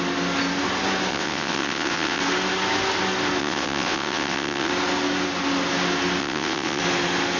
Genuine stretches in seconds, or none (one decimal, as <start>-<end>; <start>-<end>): 0.0-1.1; 2.2-3.4; 4.7-6.2; 6.8-7.4